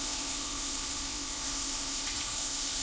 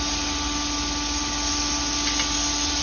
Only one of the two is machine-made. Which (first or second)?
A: first